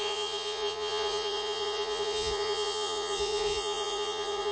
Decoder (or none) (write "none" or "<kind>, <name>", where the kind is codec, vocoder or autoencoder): vocoder, Vocos